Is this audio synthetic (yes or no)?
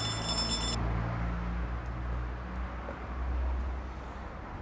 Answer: no